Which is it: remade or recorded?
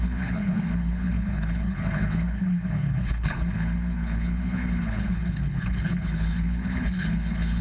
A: remade